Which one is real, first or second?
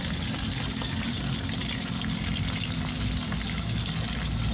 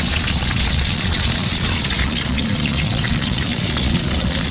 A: first